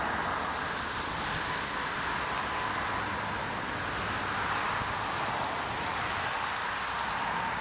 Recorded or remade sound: recorded